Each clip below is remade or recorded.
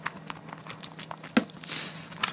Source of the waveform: recorded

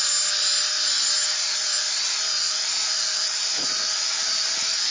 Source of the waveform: recorded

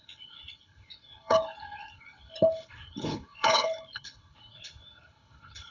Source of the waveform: remade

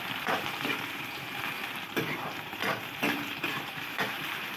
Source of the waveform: remade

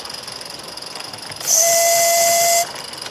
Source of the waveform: recorded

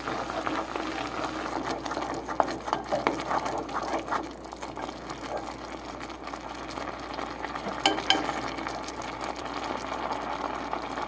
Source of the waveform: recorded